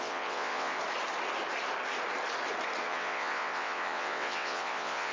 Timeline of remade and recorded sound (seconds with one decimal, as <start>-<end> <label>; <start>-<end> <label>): 0.0-0.8 remade; 0.8-2.8 recorded; 2.8-5.1 remade